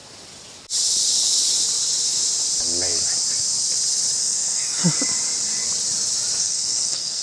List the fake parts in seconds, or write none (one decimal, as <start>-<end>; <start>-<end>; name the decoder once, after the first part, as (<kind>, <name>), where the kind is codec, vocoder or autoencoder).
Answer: 4.2-4.8 (codec, SNAC); 6.4-7.2